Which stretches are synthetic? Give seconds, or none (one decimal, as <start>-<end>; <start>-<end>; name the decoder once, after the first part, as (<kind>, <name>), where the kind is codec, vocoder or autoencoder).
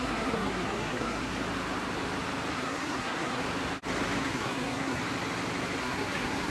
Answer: 0.0-1.3 (codec, SNAC); 2.5-3.4; 4.2-5.0; 5.8-6.5